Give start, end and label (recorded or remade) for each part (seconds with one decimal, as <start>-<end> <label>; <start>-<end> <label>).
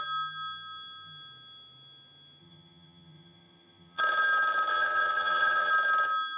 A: 0.0-2.4 recorded; 2.4-4.0 remade; 4.0-4.7 recorded; 4.7-5.7 remade; 5.7-6.4 recorded